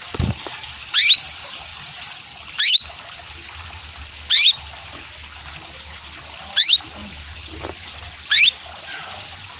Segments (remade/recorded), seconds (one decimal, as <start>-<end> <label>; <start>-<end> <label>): 0.0-9.6 recorded